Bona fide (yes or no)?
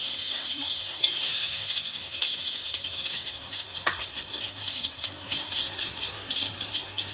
no